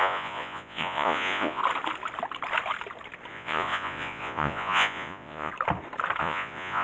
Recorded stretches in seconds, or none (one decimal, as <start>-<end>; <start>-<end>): 1.6-3.3; 5.5-6.2